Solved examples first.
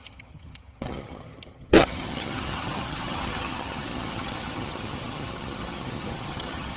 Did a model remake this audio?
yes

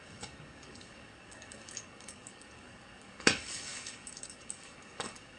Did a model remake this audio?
yes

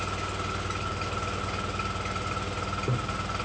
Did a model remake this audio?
no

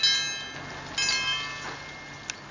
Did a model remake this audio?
no